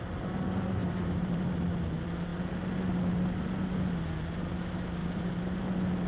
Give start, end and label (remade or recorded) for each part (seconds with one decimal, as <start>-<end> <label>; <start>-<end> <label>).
0.0-0.8 recorded; 0.8-1.5 remade; 1.5-5.0 recorded; 5.0-5.6 remade; 5.6-6.1 recorded